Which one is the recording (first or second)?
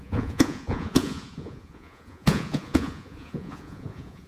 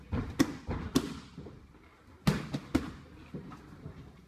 second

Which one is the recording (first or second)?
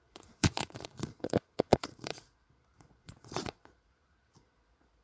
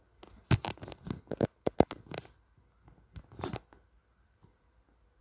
second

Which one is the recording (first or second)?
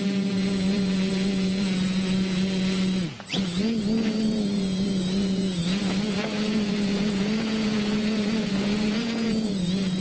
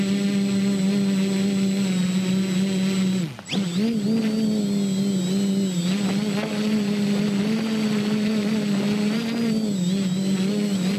second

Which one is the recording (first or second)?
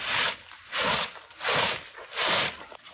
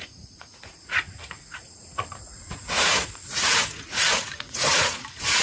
first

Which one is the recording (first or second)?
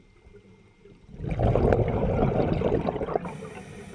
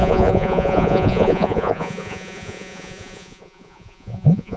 first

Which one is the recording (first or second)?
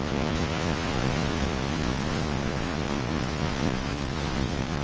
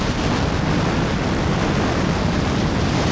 second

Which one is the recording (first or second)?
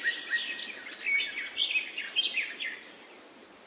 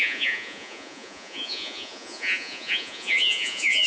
first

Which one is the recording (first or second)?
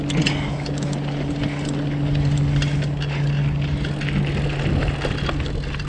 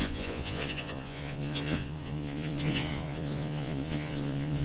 first